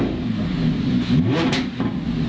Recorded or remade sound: recorded